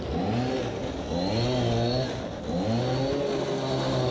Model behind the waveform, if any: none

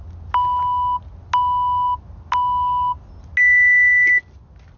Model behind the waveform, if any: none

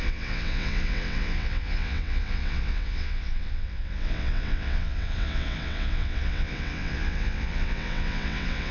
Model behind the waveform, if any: vocoder, WaveNeXt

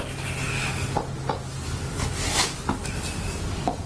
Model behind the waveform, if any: none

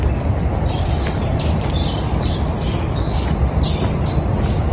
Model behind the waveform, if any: none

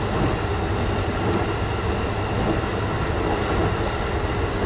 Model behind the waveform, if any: none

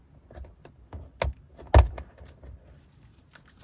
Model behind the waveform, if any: none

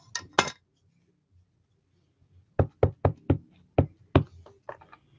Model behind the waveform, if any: none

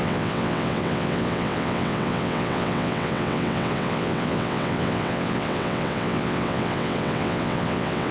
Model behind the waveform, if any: vocoder, WaveNeXt